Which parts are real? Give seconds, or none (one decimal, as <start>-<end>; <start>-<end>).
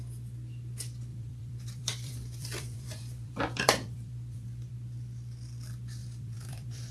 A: 0.0-1.1; 4.7-6.0